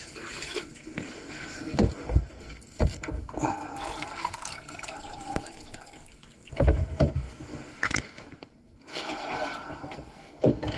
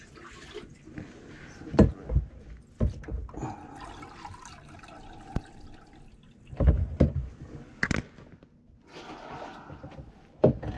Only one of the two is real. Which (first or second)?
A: second